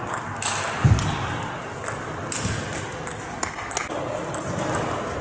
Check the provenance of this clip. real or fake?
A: real